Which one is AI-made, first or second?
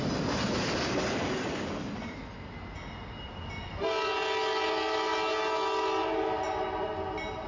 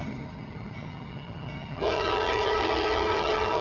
second